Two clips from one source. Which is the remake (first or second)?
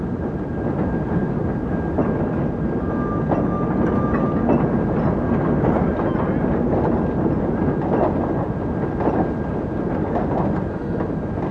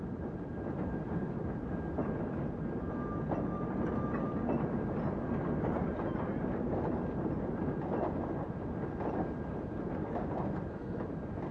second